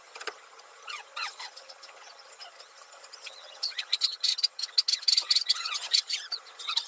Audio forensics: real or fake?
fake